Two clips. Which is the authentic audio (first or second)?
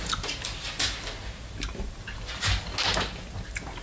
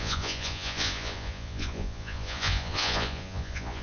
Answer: first